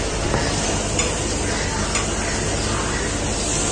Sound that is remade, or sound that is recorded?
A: recorded